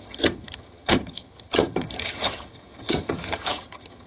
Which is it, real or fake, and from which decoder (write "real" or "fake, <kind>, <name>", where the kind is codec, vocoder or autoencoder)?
fake, vocoder, HiFi-GAN